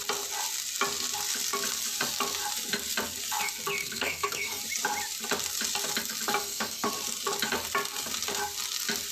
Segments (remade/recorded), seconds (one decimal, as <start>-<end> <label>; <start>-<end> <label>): 0.0-3.8 recorded; 3.8-4.6 remade; 4.6-6.4 recorded; 6.4-6.9 remade; 6.9-9.1 recorded